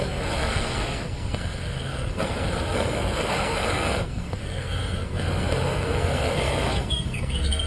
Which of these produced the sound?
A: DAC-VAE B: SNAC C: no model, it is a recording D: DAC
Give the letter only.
B